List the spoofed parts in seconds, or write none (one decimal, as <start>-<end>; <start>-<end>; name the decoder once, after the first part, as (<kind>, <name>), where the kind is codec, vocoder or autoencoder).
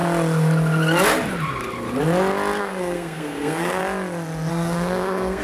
2.6-3.8 (codec, SNAC); 4.5-5.4